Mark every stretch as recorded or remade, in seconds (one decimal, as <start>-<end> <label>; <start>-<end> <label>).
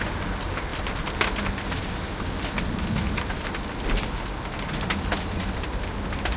0.0-6.4 recorded